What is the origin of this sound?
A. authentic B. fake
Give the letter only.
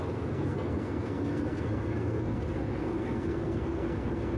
B